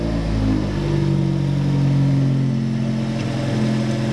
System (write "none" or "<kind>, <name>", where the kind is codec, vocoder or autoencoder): none